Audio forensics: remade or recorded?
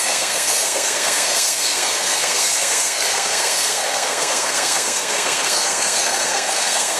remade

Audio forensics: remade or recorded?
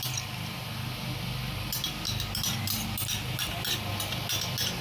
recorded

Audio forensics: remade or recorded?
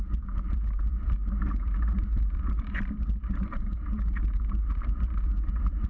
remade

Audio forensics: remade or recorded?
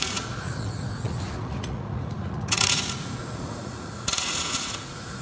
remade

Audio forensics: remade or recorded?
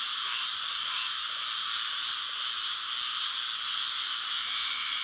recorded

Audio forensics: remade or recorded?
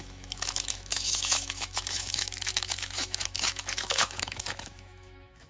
remade